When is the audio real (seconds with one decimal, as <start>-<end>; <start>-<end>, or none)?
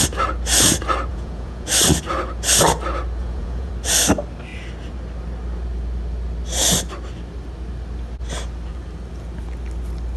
0.0-1.1; 1.7-3.2; 3.7-10.2